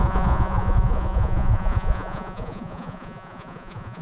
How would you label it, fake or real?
fake